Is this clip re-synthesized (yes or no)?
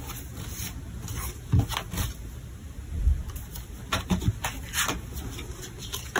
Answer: no